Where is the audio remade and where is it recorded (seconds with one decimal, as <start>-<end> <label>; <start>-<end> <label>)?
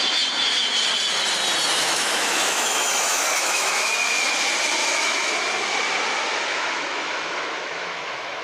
0.0-1.8 recorded; 1.8-3.9 remade; 3.9-4.8 recorded; 4.8-5.3 remade; 5.3-6.5 recorded; 6.5-8.4 remade